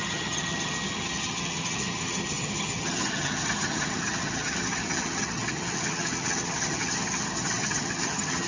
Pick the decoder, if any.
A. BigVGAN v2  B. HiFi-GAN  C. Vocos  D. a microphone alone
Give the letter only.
B